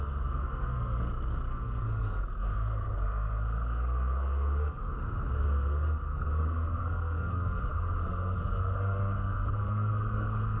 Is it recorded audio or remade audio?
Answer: remade